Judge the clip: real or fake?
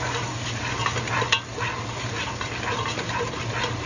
real